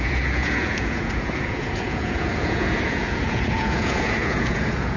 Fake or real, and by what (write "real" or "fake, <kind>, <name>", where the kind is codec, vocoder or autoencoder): fake, vocoder, Vocos